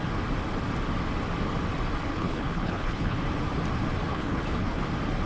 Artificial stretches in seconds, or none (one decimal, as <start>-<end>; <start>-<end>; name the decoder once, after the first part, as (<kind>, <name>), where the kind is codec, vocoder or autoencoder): 2.1-3.2 (codec, HILCodec); 4.1-4.8